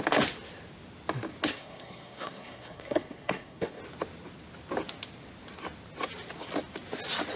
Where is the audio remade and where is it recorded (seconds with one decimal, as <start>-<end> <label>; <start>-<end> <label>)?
0.0-1.5 recorded; 1.5-3.8 remade; 3.8-7.4 recorded